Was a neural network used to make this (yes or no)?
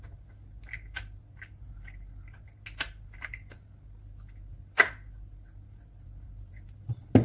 no